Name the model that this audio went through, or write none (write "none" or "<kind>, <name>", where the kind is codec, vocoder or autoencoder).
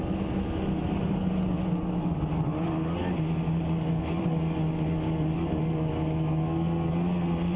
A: none